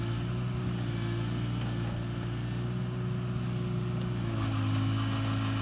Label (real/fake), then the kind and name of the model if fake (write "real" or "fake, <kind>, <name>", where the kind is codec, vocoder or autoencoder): real